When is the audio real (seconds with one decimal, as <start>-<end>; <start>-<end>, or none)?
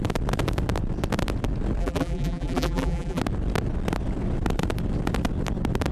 0.0-1.8; 3.2-5.9